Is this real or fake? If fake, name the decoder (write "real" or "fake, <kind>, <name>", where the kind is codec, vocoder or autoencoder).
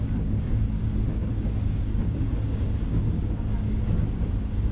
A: fake, codec, DAC